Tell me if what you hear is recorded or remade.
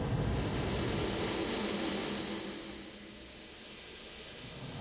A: recorded